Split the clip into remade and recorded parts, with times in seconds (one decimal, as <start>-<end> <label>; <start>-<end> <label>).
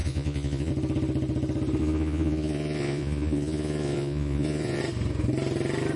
0.0-0.7 remade; 0.7-1.8 recorded; 1.8-4.8 remade; 4.8-6.0 recorded